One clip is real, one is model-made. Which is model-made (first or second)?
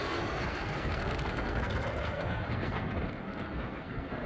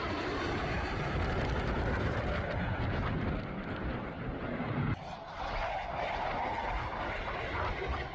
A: first